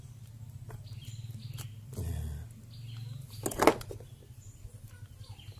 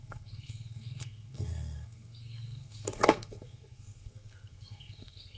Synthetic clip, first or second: second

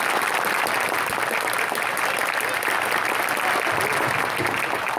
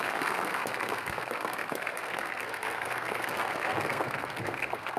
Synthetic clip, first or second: second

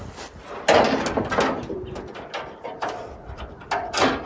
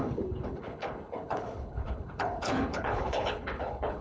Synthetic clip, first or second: second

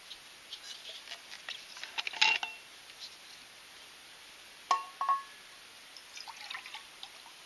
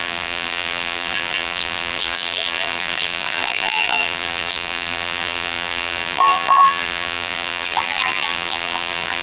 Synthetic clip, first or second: second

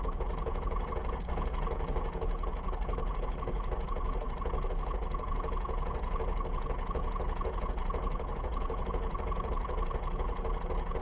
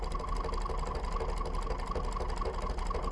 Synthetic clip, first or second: first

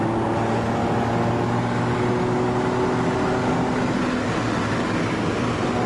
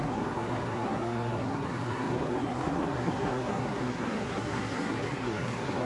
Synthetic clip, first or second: second